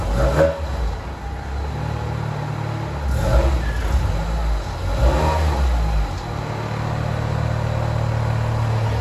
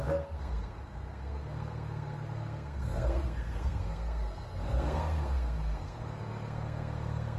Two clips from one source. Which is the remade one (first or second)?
second